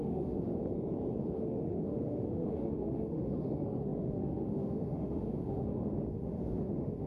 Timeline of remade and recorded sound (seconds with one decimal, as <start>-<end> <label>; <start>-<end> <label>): 0.0-0.6 remade; 0.6-1.2 recorded; 1.2-7.1 remade